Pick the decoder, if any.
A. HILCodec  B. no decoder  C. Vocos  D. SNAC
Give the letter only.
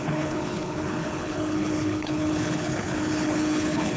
A